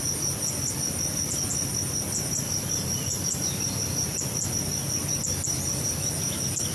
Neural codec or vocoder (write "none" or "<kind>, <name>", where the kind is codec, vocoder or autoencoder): none